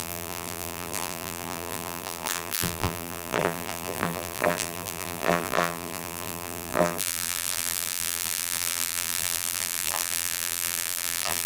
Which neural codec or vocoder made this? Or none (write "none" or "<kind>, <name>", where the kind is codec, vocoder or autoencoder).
vocoder, BigVGAN v2